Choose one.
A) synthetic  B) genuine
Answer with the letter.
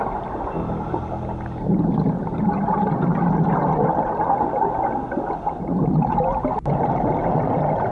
B